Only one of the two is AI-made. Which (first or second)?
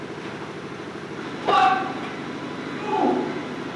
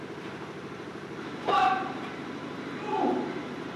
second